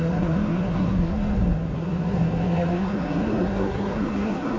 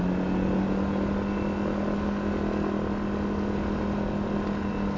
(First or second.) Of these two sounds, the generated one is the first